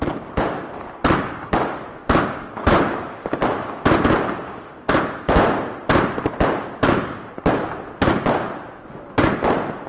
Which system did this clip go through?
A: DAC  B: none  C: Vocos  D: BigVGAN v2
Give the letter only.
D